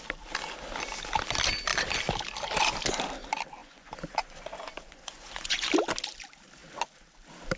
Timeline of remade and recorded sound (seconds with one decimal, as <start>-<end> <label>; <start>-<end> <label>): 0.0-3.6 recorded; 3.6-5.7 remade; 5.7-7.6 recorded